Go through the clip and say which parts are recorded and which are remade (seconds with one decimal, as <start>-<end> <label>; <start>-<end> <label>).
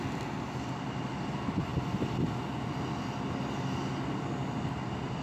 0.0-5.2 recorded